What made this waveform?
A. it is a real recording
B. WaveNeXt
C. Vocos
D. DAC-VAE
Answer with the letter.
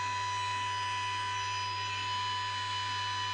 A